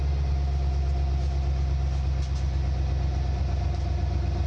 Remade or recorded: recorded